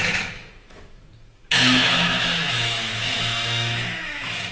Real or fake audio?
fake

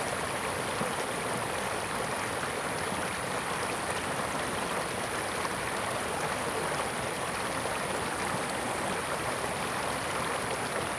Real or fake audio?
real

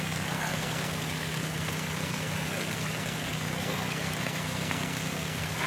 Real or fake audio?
fake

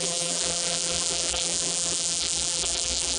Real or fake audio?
fake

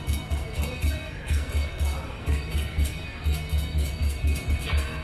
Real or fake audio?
fake